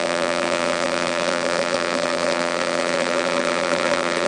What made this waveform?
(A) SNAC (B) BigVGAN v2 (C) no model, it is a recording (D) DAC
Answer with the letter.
B